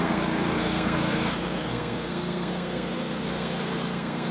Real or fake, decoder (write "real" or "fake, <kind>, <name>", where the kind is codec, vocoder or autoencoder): fake, codec, SNAC